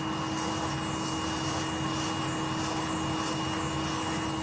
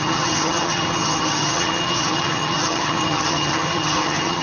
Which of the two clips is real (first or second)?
first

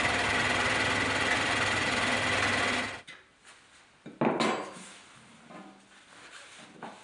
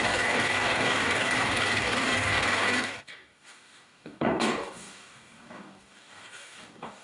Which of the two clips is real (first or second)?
first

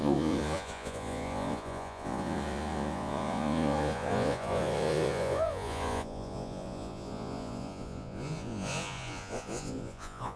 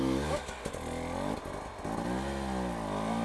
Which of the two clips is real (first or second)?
second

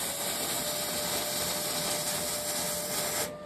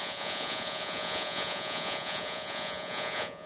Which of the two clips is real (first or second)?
first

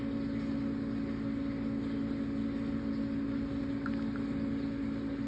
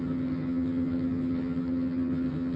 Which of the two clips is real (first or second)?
first